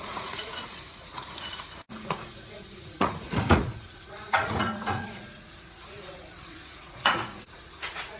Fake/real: fake